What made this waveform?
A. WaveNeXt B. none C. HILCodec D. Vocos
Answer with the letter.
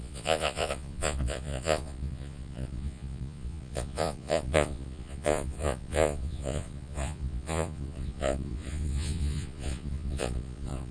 D